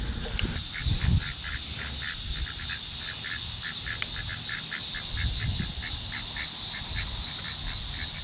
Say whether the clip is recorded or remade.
recorded